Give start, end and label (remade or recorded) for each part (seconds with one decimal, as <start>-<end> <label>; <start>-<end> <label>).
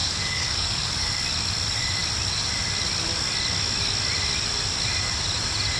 0.0-1.1 remade; 1.1-5.8 recorded